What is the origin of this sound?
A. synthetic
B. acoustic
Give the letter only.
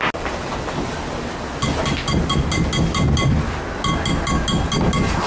B